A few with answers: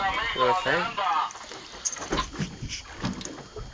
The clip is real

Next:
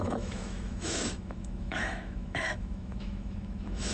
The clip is fake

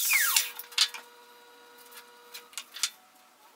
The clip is real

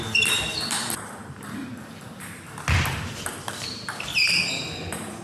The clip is real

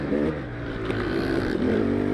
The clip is real